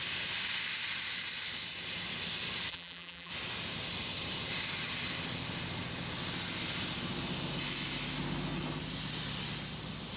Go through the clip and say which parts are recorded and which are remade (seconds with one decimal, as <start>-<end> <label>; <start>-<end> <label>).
0.0-2.7 recorded; 2.7-3.3 remade; 3.3-10.2 recorded

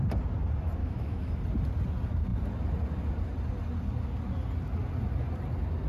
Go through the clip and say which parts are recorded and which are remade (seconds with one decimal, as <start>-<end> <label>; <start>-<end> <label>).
0.0-0.8 recorded; 0.8-1.4 remade; 1.4-5.9 recorded